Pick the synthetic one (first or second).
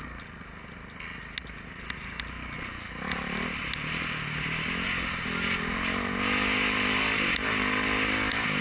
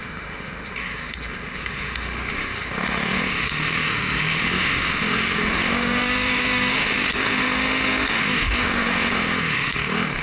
second